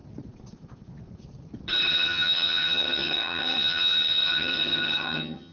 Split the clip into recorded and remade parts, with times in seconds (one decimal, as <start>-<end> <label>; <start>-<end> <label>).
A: 0.0-1.9 recorded; 1.9-5.5 remade